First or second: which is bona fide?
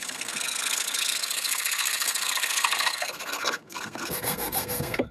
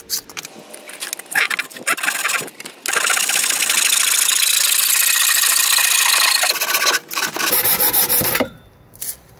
second